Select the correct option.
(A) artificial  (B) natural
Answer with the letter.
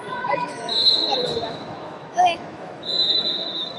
A